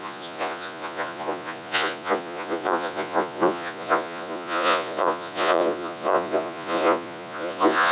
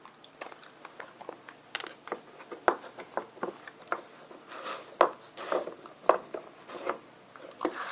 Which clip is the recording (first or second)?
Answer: second